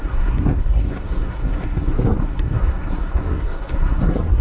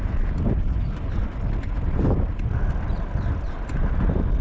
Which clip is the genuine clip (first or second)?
second